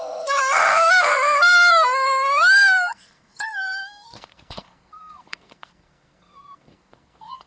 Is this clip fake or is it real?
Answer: fake